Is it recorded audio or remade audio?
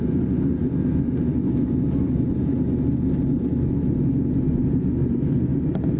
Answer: recorded